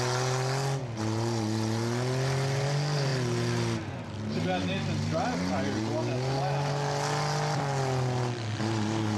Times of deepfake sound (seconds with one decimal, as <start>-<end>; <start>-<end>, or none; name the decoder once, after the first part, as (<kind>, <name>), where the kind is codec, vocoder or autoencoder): none